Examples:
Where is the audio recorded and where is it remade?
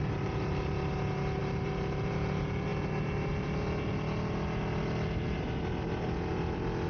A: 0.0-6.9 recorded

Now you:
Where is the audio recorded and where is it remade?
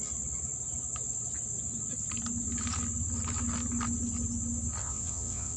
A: 0.0-4.8 recorded; 4.8-5.6 remade